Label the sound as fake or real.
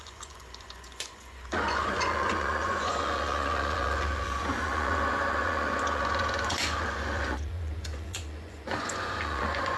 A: fake